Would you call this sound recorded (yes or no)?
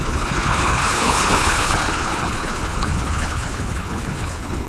no